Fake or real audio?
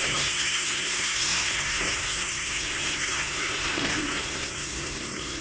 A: fake